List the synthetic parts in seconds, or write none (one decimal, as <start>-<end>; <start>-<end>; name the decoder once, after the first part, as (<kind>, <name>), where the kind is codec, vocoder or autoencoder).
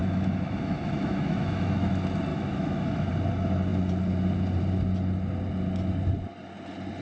0.0-1.9 (autoencoder, DAC-VAE); 2.3-3.1